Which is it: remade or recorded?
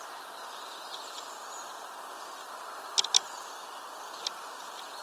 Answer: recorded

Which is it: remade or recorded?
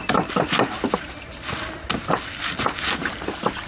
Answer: recorded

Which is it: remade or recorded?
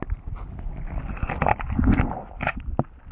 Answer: recorded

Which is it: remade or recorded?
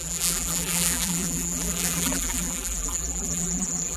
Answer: remade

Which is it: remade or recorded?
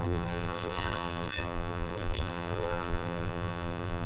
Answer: remade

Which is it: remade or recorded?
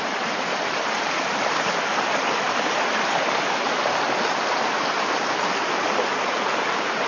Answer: remade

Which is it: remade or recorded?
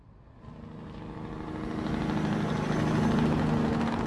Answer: recorded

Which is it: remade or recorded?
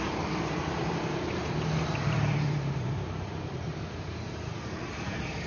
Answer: remade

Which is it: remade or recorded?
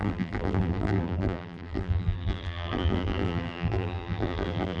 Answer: remade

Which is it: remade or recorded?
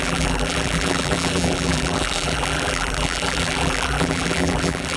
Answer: remade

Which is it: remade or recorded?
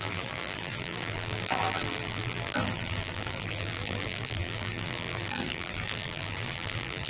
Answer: remade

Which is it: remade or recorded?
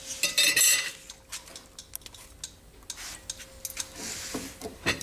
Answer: recorded